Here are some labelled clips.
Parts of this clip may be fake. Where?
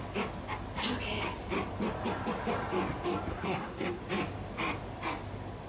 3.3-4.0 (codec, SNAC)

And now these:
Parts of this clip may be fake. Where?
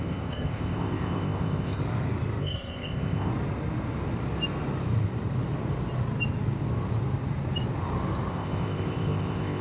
0.0-1.8 (codec, ZipCodec); 2.4-3.3; 8.3-9.6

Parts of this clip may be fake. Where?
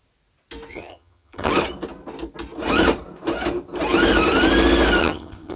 0.7-1.5 (vocoder, HiFi-GAN); 5.0-5.6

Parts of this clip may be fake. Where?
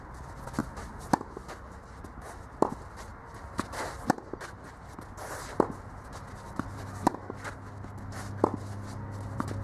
none